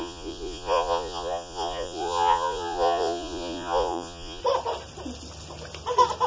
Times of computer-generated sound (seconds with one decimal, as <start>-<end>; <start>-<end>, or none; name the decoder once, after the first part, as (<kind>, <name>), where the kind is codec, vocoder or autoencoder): 0.0-4.4 (vocoder, Vocos)